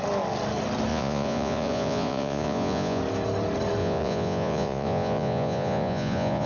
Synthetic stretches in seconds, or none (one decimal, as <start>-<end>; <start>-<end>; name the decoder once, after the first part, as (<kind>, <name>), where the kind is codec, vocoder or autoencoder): 0.9-3.0 (vocoder, Vocos); 3.8-6.5